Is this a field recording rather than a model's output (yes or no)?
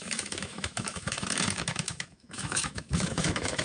no